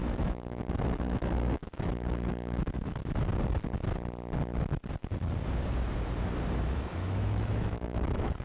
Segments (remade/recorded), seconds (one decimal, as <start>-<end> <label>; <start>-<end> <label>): 0.0-3.0 remade; 3.0-6.6 recorded; 6.6-8.4 remade